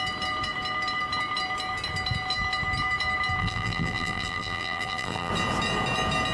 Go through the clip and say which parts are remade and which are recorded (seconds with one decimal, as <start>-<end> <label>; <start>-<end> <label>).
0.0-3.4 recorded; 3.4-5.3 remade; 5.3-6.3 recorded